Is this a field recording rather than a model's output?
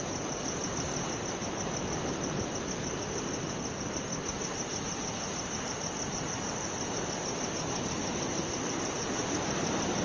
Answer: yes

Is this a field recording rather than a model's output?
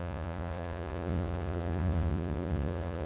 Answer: no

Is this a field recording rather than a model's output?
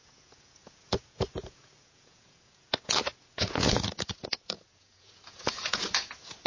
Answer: no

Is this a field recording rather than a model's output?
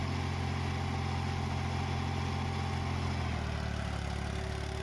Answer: yes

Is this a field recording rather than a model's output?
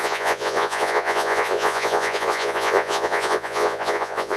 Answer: no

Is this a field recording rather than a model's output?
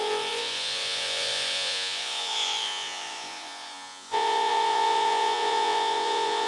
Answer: no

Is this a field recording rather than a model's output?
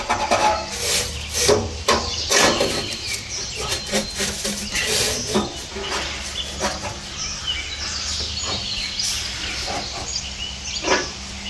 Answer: yes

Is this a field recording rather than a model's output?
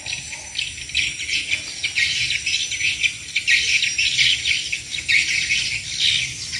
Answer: yes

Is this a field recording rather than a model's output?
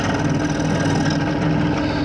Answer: yes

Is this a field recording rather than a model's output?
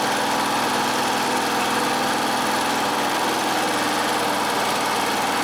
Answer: yes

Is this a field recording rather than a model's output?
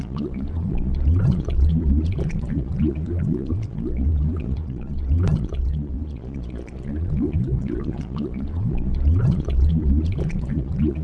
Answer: no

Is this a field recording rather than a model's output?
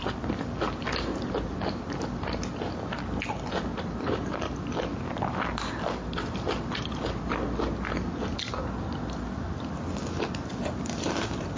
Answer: yes